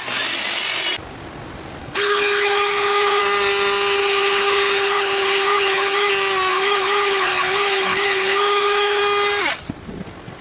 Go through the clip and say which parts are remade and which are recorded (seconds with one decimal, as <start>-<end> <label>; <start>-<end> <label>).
0.0-1.8 recorded; 1.8-3.2 remade; 3.2-4.0 recorded; 4.0-6.1 remade; 6.1-6.5 recorded; 6.5-9.0 remade; 9.0-10.4 recorded